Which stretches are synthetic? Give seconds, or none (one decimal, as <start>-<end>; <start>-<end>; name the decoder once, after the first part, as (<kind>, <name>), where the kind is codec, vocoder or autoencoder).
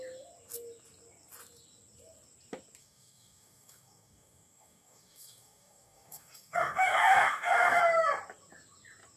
2.8-7.8 (codec, DAC)